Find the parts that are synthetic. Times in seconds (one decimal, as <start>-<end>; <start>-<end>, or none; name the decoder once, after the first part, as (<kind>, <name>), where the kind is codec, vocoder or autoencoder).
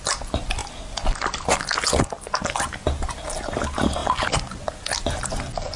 none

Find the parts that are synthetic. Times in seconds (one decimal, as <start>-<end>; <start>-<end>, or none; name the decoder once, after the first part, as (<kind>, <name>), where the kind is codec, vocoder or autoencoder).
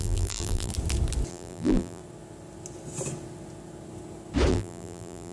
0.0-0.7 (vocoder, BigVGAN v2); 1.3-2.0; 4.5-5.3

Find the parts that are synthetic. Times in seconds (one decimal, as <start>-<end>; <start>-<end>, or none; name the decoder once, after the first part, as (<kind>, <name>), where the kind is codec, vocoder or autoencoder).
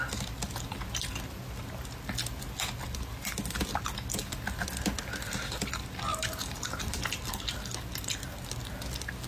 6.1-7.0 (vocoder, BigVGAN v2)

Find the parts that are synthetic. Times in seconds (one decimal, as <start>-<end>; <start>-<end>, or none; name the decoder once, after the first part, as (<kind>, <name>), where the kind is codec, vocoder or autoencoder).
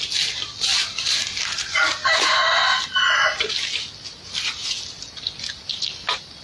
none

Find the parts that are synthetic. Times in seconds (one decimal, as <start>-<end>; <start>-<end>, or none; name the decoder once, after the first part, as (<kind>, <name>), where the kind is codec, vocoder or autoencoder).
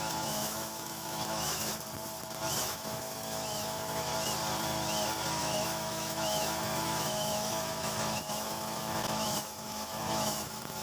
0.0-1.7 (autoencoder, DAC-VAE); 2.6-4.1; 5.4-10.8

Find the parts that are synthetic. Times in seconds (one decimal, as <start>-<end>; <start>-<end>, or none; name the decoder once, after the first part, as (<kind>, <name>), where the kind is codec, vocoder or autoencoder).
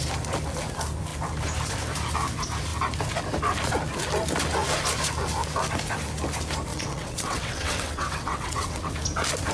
6.7-8.9 (vocoder, WaveNeXt)